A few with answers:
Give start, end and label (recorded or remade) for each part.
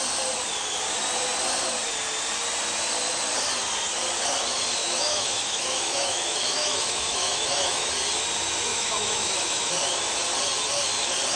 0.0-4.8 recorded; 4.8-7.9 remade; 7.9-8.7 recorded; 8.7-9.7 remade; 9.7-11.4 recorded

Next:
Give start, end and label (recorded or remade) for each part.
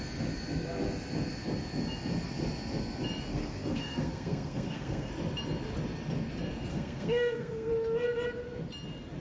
0.0-3.3 recorded; 3.3-5.1 remade; 5.1-6.7 recorded; 6.7-7.7 remade; 7.7-9.2 recorded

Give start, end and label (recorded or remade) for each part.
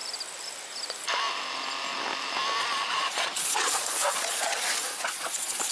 0.0-2.6 recorded; 2.6-5.7 remade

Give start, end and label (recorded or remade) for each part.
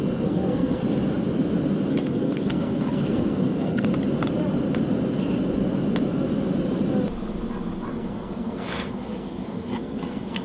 0.0-0.8 remade; 0.8-1.9 recorded; 1.9-3.9 remade; 3.9-7.9 recorded; 7.9-10.4 remade